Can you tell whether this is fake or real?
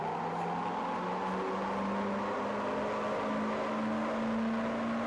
real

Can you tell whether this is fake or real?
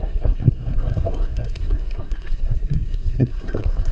fake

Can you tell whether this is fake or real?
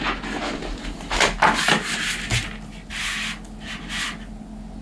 real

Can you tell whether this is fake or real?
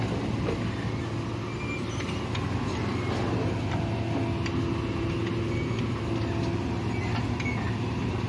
real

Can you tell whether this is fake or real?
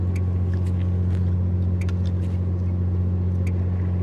real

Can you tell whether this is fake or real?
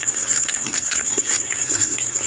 fake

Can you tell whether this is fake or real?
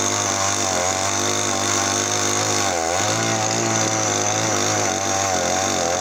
real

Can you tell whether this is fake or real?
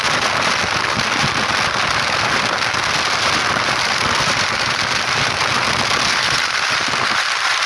real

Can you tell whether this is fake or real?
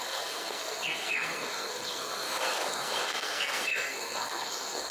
fake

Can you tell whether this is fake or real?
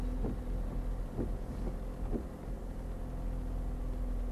real